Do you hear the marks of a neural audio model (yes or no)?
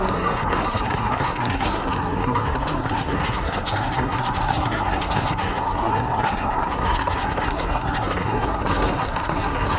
yes